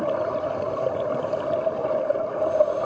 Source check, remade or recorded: recorded